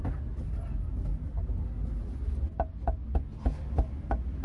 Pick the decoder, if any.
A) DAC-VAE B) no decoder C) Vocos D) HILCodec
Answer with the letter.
B